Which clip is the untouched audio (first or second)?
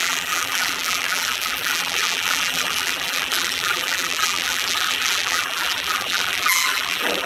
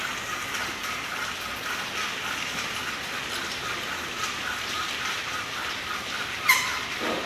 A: second